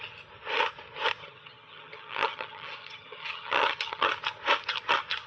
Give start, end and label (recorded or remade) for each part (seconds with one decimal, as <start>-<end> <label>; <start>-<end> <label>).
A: 0.0-1.2 recorded; 1.2-4.1 remade; 4.1-5.3 recorded